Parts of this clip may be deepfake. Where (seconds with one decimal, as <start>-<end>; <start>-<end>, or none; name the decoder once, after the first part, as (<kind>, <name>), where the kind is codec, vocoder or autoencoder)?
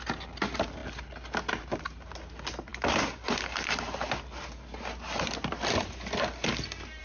none